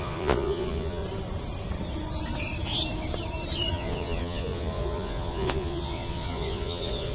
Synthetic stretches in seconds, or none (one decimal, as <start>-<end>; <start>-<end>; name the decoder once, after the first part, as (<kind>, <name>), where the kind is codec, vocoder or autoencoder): 0.0-1.0 (vocoder, Vocos); 3.7-7.1